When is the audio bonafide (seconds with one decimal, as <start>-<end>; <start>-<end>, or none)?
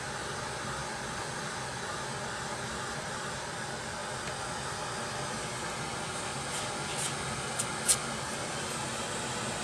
0.0-9.6